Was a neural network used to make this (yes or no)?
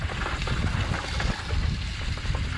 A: no